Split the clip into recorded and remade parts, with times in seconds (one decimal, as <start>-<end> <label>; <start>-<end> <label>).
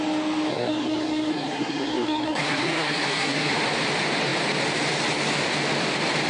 0.0-0.5 recorded; 0.5-3.5 remade; 3.5-6.3 recorded